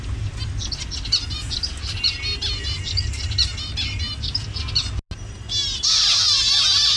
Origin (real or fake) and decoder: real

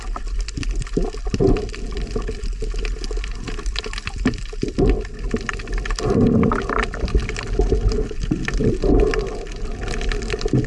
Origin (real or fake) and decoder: real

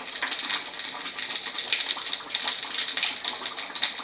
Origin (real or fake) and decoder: real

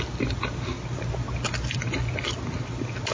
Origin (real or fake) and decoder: real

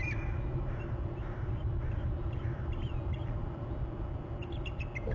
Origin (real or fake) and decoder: real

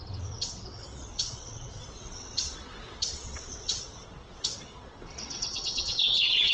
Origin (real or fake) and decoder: fake, vocoder, WaveNeXt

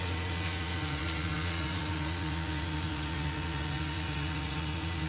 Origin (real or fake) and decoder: fake, vocoder, Vocos